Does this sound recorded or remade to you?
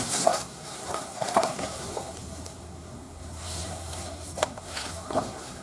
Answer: remade